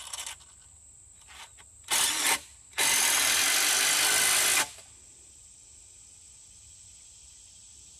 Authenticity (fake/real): real